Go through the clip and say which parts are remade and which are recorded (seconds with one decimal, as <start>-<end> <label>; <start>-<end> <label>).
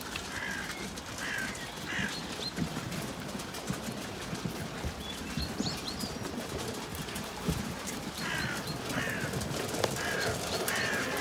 0.0-6.9 recorded; 6.9-8.3 remade; 8.3-11.2 recorded